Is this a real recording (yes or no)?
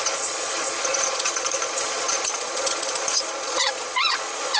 no